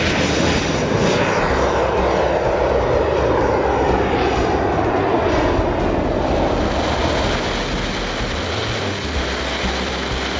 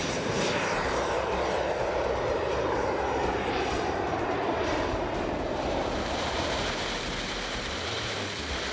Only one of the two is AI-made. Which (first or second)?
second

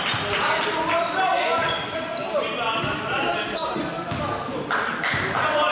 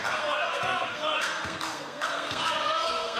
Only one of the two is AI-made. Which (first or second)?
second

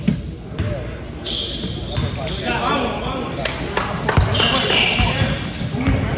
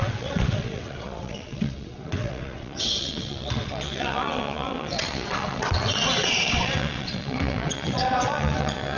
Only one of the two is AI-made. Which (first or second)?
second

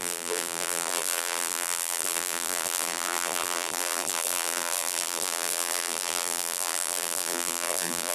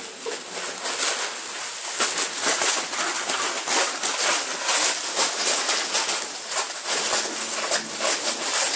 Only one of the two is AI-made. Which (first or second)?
first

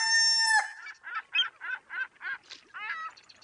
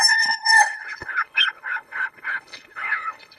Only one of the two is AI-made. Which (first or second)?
second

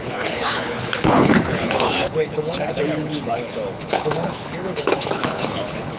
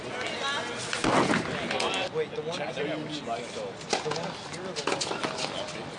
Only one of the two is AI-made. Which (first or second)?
first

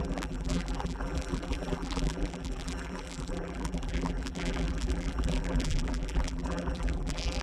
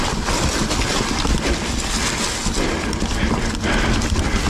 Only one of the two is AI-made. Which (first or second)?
first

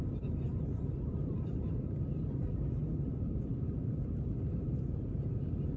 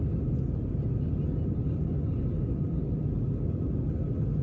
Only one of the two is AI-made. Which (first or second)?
first